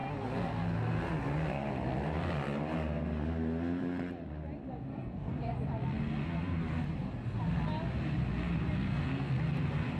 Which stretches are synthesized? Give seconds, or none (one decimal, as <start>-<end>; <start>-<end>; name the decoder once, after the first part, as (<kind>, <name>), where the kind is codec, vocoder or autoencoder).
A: 4.8-5.3 (codec, SNAC); 8.9-9.4